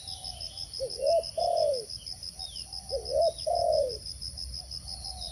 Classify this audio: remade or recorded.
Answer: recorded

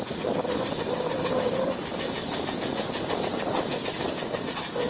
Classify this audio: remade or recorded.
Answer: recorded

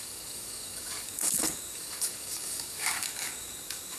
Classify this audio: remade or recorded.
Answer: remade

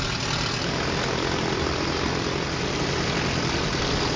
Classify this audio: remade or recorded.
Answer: recorded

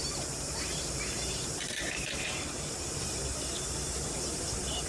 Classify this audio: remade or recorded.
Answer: remade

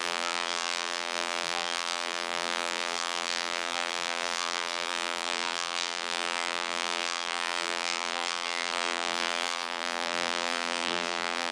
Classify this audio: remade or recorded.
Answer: remade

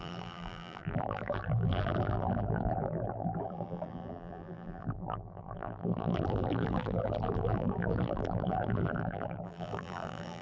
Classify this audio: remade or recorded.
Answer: remade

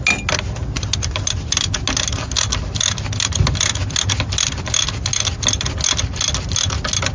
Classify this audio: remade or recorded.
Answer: recorded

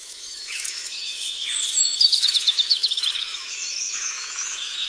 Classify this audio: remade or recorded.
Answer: remade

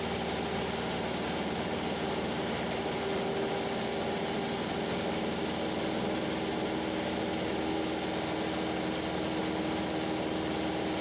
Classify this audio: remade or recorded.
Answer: recorded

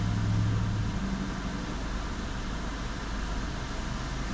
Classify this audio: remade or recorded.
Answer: recorded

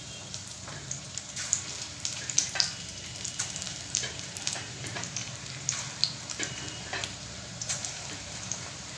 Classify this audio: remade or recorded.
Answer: remade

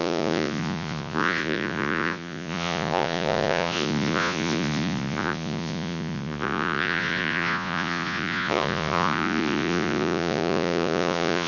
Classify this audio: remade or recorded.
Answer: remade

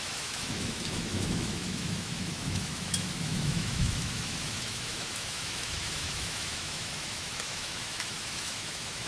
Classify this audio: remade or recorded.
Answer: remade